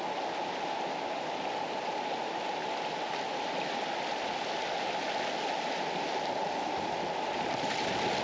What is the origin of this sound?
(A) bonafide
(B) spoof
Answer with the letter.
A